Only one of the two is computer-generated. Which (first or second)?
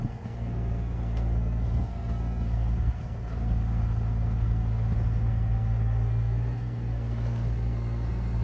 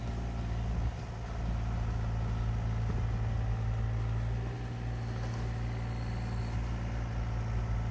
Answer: first